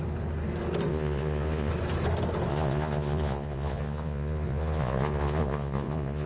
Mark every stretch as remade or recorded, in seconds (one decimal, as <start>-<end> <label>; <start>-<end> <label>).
0.0-0.9 recorded; 0.9-1.7 remade; 1.7-2.5 recorded; 2.5-6.3 remade